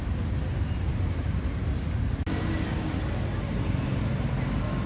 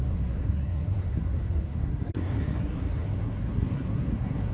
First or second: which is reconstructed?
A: second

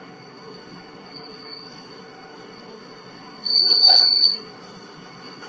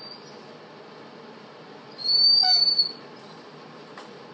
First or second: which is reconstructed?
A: first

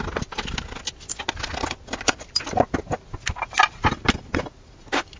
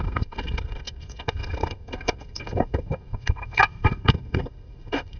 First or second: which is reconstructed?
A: second